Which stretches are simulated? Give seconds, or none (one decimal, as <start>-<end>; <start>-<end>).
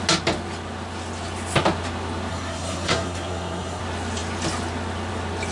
2.3-3.8